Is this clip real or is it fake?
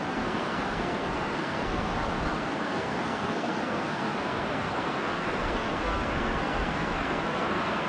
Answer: fake